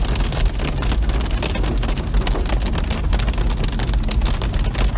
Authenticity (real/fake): real